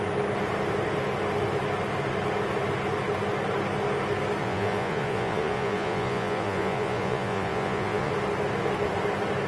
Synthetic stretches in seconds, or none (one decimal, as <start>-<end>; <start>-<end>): 4.4-8.1